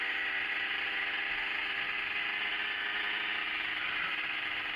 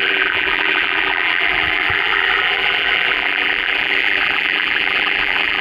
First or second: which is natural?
first